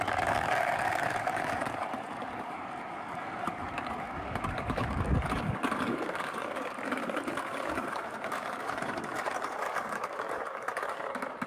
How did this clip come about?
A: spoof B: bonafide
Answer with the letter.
A